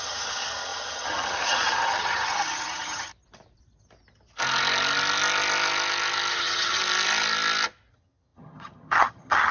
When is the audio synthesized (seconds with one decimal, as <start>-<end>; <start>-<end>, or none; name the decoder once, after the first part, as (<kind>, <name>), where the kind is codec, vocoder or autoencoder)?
0.0-3.1 (vocoder, HiFi-GAN); 6.3-6.8; 7.9-9.5